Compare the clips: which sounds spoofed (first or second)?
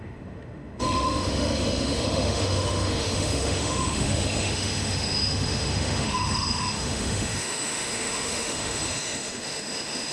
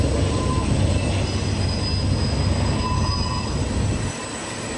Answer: first